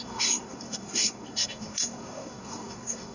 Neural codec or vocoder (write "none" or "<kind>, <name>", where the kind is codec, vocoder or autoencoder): codec, SNAC